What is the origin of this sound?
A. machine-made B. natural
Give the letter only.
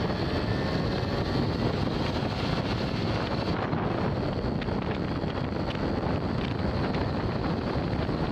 B